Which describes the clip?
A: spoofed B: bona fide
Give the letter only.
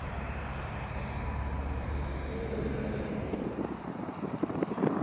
A